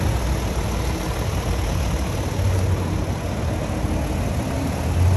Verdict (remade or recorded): recorded